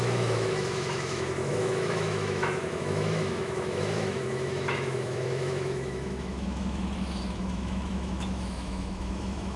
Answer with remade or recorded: remade